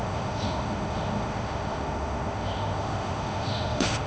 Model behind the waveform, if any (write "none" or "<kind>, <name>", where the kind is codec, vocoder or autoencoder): autoencoder, DAC-VAE